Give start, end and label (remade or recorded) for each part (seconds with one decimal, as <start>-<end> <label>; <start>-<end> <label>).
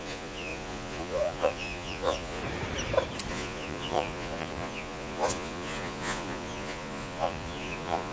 0.0-2.4 remade; 2.4-3.3 recorded; 3.3-8.1 remade